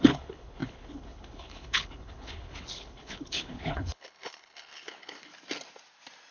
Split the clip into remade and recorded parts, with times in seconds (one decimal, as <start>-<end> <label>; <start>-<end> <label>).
0.0-5.3 remade; 5.3-6.3 recorded